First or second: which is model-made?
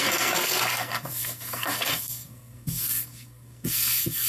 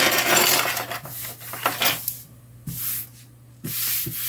first